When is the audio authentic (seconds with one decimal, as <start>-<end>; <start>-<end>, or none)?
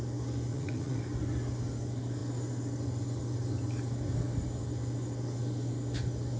0.0-0.5; 1.0-6.4